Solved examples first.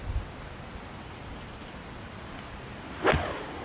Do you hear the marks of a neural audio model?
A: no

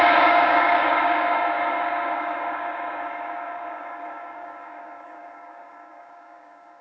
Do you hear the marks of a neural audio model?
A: yes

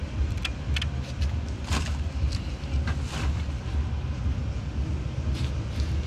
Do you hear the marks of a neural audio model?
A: no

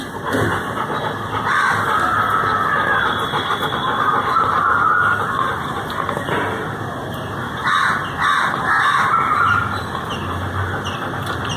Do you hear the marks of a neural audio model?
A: no